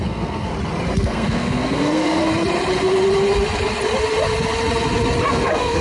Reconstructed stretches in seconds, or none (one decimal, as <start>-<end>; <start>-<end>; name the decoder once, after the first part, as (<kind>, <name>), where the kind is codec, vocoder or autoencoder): 0.0-0.5 (codec, SNAC); 1.0-2.2; 5.3-5.8